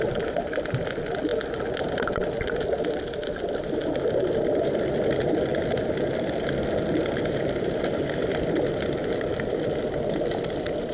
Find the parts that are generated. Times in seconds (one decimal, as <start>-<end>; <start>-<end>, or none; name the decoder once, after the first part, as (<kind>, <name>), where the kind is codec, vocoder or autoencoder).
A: 0.0-1.3 (vocoder, BigVGAN v2); 2.9-10.9